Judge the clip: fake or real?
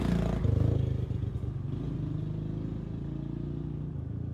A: real